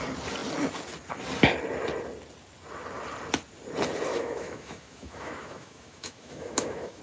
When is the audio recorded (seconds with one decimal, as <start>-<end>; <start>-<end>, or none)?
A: 0.0-4.1